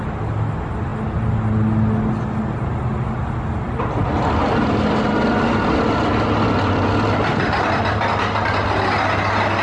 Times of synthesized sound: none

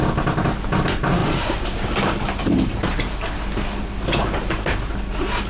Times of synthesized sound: 1.2-3.1; 4.4-4.9

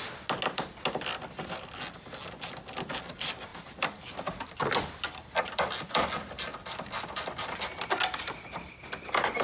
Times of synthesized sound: none